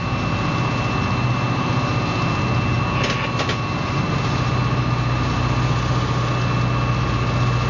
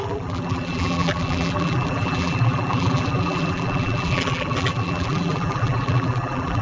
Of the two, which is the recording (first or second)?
first